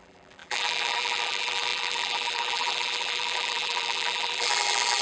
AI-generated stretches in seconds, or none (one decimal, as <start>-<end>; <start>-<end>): 0.0-5.0